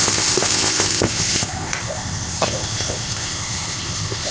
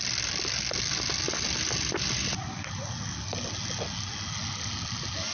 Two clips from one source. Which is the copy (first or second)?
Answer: first